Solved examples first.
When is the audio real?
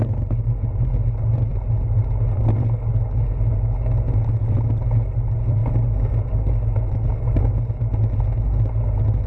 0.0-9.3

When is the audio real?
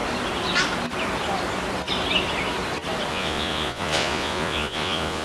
0.0-3.1